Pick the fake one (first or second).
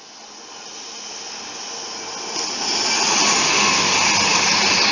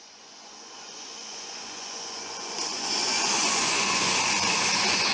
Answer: second